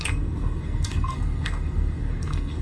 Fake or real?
fake